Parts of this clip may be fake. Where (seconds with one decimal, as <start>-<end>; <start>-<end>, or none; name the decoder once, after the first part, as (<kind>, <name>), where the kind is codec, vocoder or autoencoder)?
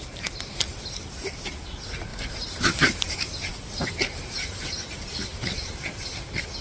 0.0-6.6 (vocoder, BigVGAN v2)